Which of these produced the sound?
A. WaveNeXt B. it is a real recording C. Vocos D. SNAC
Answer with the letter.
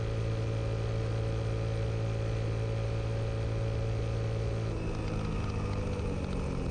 B